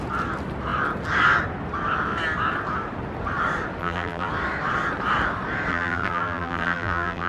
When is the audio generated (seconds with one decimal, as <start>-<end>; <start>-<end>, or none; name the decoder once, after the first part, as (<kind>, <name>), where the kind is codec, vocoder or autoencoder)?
3.8-4.3 (vocoder, BigVGAN v2); 5.7-7.3